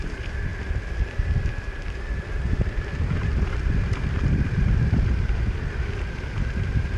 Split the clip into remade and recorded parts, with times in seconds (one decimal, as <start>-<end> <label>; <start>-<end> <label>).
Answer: 0.0-0.5 remade; 0.5-2.1 recorded; 2.1-7.0 remade